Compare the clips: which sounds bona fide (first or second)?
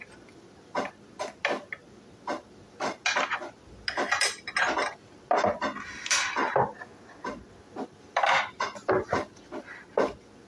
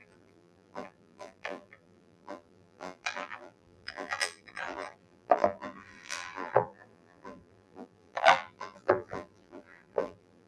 first